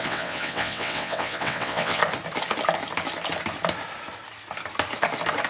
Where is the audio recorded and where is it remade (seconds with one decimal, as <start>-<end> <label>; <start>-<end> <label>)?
0.0-2.0 remade; 2.0-5.5 recorded